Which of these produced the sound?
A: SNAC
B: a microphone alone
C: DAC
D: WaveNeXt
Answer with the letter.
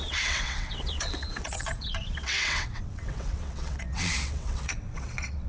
D